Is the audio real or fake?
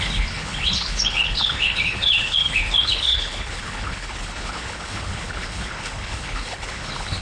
fake